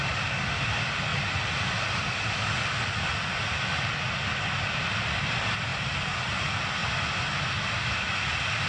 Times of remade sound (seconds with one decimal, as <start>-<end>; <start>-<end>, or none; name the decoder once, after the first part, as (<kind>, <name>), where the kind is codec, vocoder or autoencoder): none

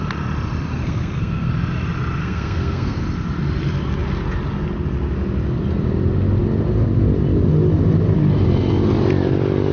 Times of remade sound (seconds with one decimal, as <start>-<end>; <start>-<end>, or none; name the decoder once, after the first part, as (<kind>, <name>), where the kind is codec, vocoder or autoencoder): 0.7-1.5 (codec, SNAC); 2.2-3.0

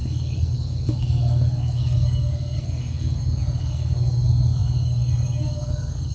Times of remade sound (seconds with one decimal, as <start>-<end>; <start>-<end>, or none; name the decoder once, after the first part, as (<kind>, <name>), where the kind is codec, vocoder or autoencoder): 0.0-6.1 (codec, SNAC)

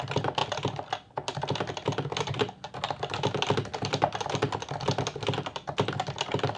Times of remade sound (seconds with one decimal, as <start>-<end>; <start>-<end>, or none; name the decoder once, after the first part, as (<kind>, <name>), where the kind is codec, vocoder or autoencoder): none

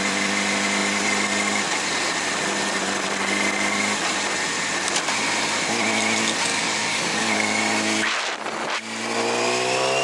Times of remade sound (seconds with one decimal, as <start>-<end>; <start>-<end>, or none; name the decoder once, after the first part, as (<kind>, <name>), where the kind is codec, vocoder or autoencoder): 6.5-7.6 (codec, DAC)

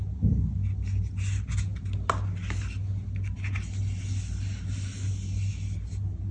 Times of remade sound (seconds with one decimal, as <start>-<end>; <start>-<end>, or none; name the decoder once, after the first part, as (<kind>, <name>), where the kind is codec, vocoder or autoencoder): none

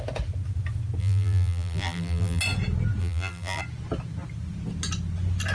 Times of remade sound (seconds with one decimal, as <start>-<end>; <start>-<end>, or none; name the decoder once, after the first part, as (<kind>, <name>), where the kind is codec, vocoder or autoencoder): 1.0-2.4 (vocoder, BigVGAN v2); 3.0-3.6